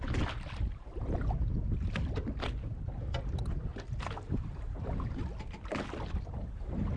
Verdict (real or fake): real